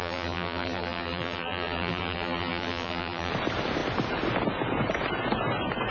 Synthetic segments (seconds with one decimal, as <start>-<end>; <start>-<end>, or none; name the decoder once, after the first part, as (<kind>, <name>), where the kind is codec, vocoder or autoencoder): 0.0-3.3 (vocoder, BigVGAN v2)